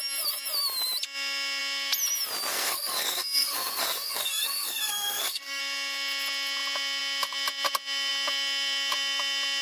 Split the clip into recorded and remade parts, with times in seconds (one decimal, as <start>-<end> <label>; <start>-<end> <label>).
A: 0.0-2.5 recorded; 2.5-5.6 remade; 5.6-9.6 recorded